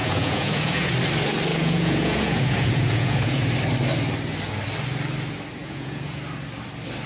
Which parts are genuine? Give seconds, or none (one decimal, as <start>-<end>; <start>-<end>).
0.9-1.5; 3.4-5.6; 6.2-7.1

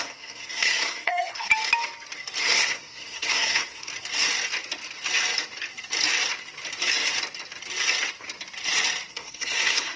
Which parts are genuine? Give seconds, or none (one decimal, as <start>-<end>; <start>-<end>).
1.5-2.4; 3.9-9.1